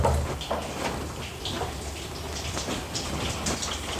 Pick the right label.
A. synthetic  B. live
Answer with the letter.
B